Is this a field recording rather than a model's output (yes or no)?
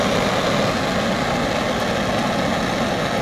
yes